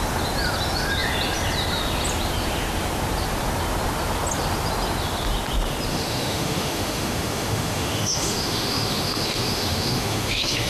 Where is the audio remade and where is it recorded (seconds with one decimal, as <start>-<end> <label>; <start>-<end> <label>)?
0.0-5.9 recorded; 5.9-10.7 remade